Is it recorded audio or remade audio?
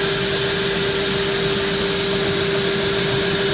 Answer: recorded